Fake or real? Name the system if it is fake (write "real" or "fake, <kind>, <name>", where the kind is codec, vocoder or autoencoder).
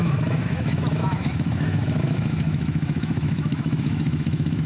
fake, autoencoder, DAC-VAE